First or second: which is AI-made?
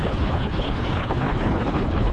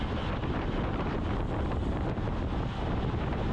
first